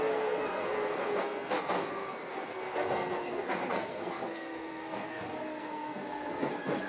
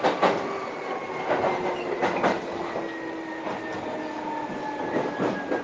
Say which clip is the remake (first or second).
first